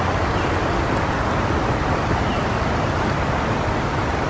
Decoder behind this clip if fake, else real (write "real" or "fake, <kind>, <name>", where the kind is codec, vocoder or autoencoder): real